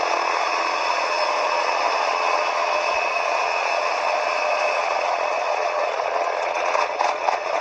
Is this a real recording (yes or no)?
no